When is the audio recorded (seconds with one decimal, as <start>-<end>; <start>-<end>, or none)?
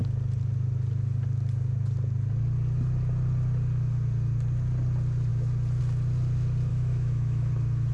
0.0-6.7; 7.5-7.9